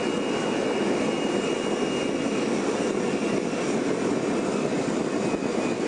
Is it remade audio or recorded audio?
recorded